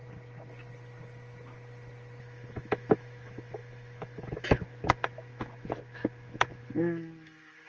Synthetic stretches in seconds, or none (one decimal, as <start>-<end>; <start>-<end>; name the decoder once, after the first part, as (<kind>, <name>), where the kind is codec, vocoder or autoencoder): 2.2-7.7 (autoencoder, DAC-VAE)